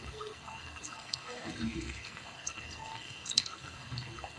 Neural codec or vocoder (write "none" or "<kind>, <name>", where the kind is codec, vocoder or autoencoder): codec, SNAC